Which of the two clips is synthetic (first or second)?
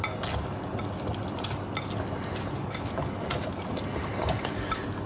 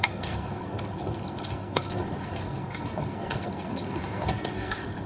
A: second